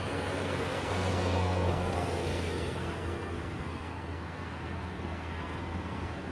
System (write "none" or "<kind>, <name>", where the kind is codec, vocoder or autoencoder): codec, SNAC